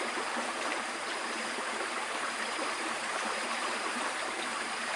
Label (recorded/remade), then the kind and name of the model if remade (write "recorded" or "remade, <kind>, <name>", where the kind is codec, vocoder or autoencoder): remade, vocoder, BigVGAN v2